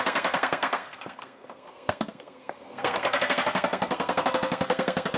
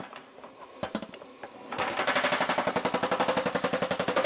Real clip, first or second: second